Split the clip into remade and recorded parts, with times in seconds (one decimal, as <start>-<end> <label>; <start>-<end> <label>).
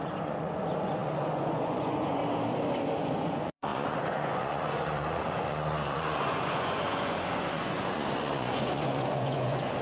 0.0-2.2 remade; 2.2-3.0 recorded; 3.0-9.8 remade